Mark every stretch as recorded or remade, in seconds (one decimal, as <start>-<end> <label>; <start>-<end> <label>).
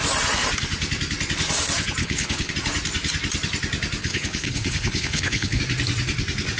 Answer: 0.0-2.0 recorded; 2.0-2.5 remade; 2.5-4.0 recorded; 4.0-5.6 remade; 5.6-6.6 recorded